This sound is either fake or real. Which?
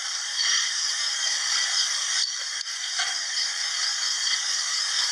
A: fake